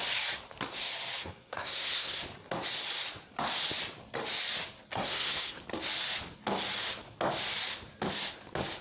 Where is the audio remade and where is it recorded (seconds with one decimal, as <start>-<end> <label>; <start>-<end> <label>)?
0.0-1.2 recorded; 1.2-2.2 remade; 2.2-4.9 recorded; 4.9-5.6 remade; 5.6-8.8 recorded